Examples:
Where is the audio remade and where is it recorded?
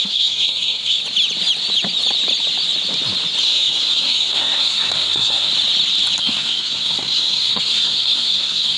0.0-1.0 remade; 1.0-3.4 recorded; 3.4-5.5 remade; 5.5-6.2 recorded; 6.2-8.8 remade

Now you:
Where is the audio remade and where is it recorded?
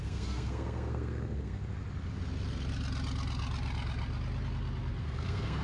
0.0-1.6 remade; 1.6-5.0 recorded; 5.0-5.6 remade